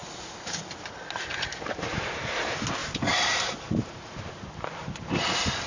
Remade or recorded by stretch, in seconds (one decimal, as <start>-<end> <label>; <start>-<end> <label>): 0.0-1.9 recorded; 1.9-2.4 remade; 2.4-2.8 recorded; 2.8-5.0 remade; 5.0-5.7 recorded